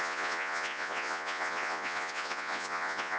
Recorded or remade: remade